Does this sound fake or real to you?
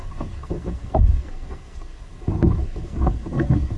fake